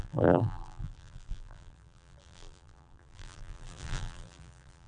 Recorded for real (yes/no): no